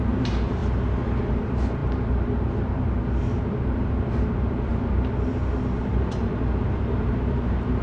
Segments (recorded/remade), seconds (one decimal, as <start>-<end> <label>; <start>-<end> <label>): 0.0-0.6 remade; 0.6-1.2 recorded; 1.2-4.7 remade; 4.7-5.8 recorded; 5.8-7.8 remade